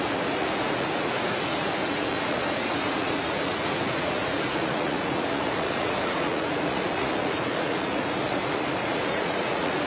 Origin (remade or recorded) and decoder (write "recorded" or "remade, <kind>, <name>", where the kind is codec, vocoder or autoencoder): remade, vocoder, Vocos